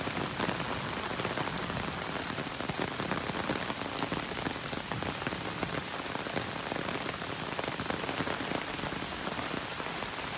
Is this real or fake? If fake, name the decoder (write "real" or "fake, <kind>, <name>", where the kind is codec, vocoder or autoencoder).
real